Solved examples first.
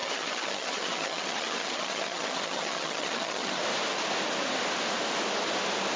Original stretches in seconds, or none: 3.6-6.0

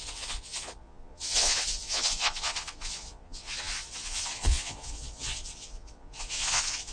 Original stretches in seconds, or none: none

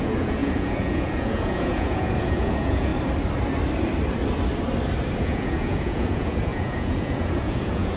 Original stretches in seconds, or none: 2.9-5.2

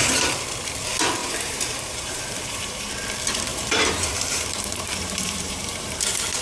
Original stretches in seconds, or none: 0.0-1.2; 2.9-3.5; 6.0-6.4

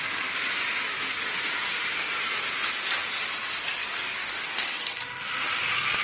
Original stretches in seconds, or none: 0.0-3.8; 4.9-6.0

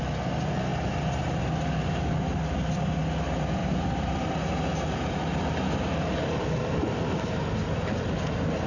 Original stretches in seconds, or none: 0.0-0.7; 1.4-3.6; 7.0-8.7

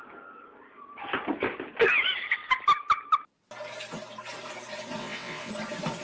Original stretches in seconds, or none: 0.0-5.0; 5.5-6.0